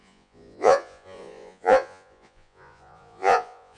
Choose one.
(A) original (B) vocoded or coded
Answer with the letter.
B